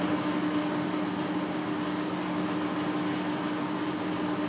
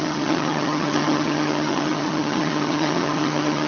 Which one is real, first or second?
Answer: first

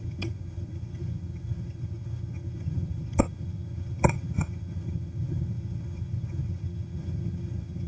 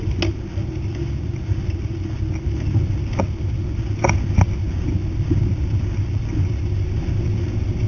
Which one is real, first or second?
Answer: second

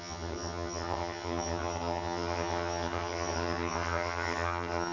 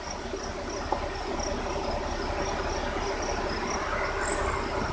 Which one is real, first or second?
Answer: second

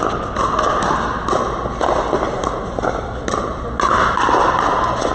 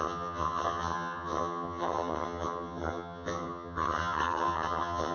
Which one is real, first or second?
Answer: first